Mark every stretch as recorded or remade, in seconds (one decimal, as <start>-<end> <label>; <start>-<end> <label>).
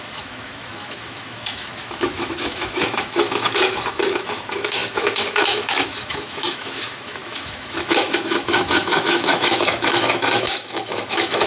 0.0-11.5 remade